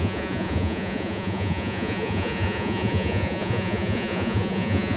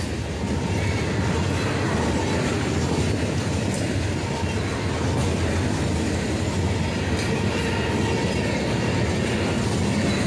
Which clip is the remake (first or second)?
first